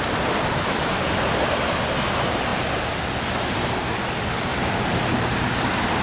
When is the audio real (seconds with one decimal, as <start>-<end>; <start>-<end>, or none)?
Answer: 0.0-4.5; 5.5-6.0